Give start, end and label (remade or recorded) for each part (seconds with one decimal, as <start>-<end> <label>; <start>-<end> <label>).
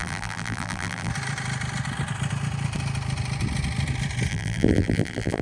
0.0-1.1 remade; 1.1-4.3 recorded; 4.3-5.4 remade